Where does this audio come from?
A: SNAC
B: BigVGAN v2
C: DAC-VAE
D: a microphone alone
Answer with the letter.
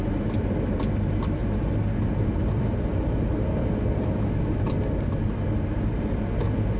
D